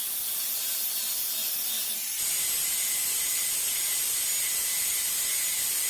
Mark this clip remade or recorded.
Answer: recorded